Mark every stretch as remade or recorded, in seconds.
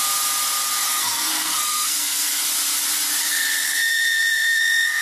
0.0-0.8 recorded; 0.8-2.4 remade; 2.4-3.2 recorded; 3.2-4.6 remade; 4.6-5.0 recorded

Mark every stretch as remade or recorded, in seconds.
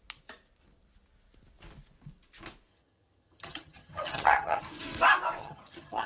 0.0-2.7 recorded; 2.7-4.6 remade; 4.6-5.4 recorded; 5.4-6.1 remade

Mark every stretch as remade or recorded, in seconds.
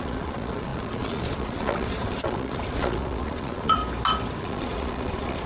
0.0-3.8 remade; 3.8-4.4 recorded; 4.4-5.5 remade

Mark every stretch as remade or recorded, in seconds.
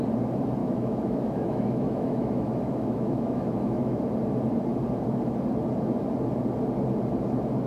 0.0-0.6 recorded; 0.6-4.0 remade; 4.0-7.7 recorded